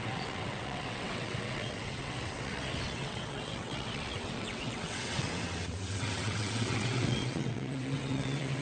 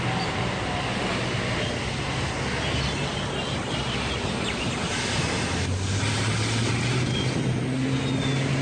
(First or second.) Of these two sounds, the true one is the second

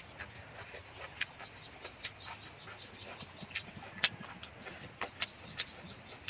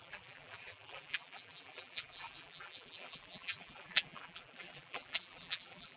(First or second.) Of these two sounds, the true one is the first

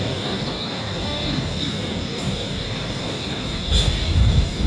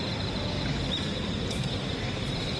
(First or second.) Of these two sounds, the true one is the second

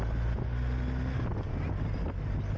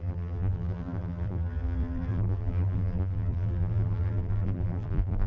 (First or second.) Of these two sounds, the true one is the first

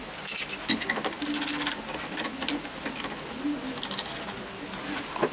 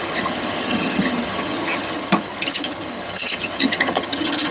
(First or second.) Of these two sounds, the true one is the first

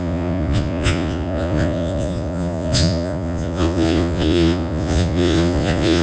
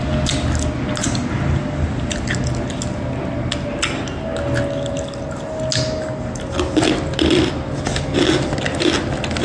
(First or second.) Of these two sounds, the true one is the second